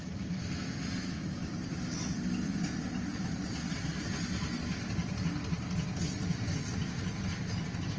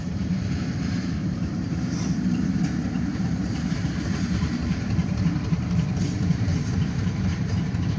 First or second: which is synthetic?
second